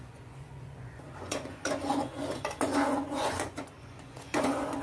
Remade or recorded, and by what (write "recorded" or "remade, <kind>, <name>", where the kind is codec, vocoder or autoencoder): remade, vocoder, Vocos